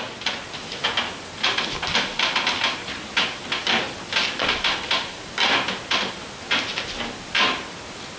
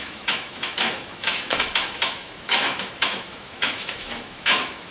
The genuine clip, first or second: first